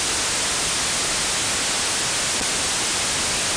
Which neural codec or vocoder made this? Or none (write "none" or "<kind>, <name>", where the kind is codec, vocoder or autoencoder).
none